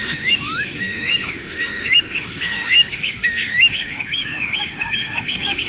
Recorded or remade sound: remade